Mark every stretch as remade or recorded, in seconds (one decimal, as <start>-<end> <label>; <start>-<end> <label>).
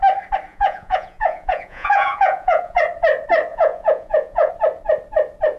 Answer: 0.0-0.5 recorded; 0.5-2.8 remade; 2.8-3.5 recorded; 3.5-4.5 remade; 4.5-5.6 recorded